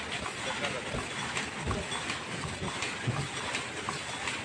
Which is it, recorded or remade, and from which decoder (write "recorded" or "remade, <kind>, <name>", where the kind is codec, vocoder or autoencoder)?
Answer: recorded